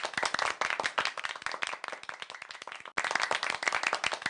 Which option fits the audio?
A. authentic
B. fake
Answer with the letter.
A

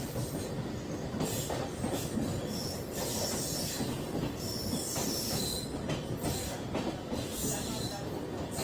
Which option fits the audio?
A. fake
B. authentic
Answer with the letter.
B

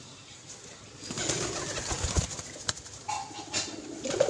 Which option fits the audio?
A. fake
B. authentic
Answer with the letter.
B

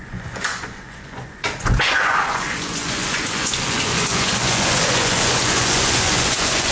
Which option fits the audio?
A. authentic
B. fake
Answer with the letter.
B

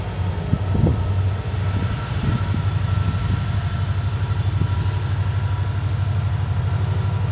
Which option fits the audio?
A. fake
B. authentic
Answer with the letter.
B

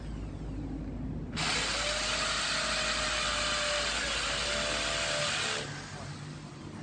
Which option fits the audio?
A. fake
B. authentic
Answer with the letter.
B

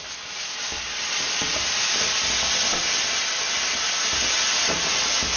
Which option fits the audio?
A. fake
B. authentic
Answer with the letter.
B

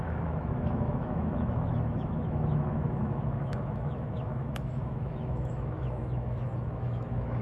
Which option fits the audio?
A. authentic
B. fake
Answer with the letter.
B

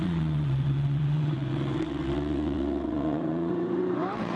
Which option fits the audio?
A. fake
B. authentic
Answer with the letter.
A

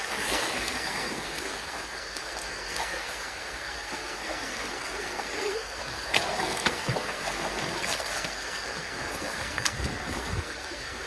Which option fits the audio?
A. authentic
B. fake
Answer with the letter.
B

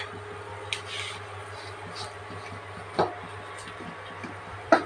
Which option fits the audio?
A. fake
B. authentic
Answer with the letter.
B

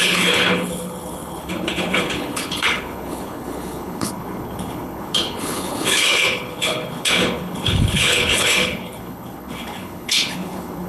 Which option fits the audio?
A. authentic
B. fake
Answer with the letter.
B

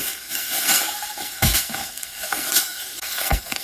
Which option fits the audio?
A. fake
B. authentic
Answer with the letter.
A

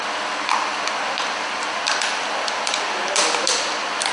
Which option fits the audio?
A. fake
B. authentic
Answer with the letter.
B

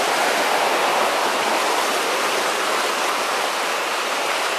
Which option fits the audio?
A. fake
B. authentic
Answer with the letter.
B